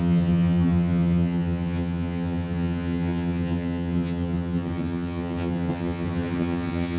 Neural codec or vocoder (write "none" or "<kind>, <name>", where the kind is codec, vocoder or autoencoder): vocoder, HiFi-GAN